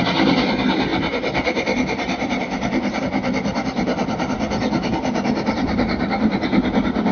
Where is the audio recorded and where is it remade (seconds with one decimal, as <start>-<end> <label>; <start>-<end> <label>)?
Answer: 0.0-7.1 recorded